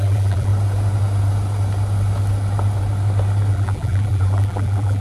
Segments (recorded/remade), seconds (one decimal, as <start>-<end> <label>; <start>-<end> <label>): 0.0-0.5 remade; 0.5-3.5 recorded; 3.5-5.0 remade